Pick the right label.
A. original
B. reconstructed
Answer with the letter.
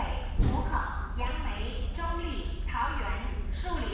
A